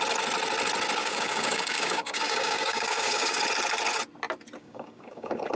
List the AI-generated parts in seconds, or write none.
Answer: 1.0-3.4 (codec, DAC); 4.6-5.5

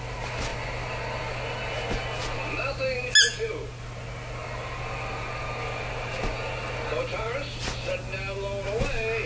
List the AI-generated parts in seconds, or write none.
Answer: none

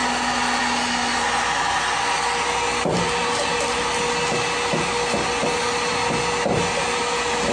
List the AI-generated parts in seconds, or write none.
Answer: none

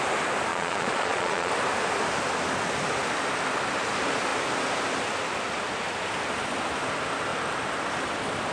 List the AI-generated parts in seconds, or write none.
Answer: 0.5-1.5 (vocoder, Vocos)

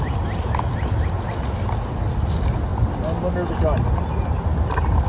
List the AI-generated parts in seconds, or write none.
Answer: none

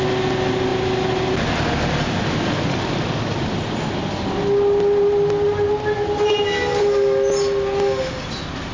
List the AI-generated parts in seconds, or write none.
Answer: none

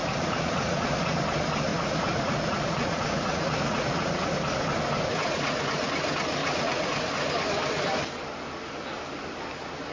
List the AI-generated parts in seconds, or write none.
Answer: 0.0-1.2 (vocoder, Vocos); 1.7-4.3; 5.1-5.7; 6.4-7.1